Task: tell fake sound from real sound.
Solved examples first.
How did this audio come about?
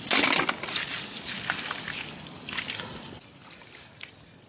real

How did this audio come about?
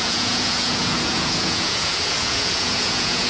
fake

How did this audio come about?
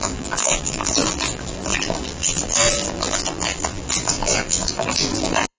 fake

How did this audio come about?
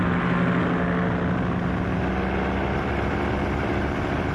real